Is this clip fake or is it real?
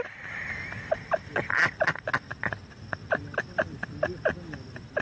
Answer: real